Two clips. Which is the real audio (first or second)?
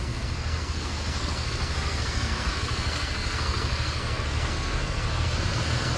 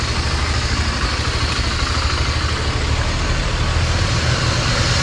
second